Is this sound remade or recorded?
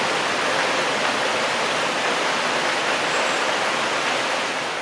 recorded